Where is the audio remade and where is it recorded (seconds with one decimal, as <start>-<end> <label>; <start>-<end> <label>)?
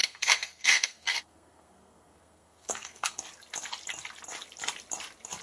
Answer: 0.0-3.2 remade; 3.2-5.4 recorded